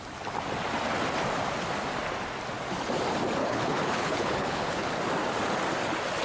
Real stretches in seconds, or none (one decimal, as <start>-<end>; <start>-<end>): 0.0-3.4; 4.9-6.2